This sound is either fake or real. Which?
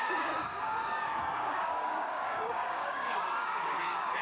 fake